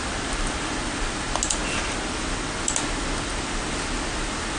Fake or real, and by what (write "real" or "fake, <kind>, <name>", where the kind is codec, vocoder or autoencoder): real